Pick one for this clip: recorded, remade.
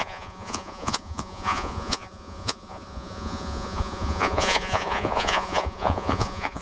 remade